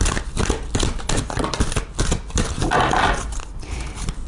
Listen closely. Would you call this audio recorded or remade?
recorded